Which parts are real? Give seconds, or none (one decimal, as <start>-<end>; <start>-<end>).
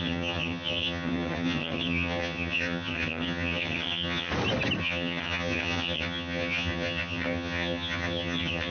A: 4.3-4.8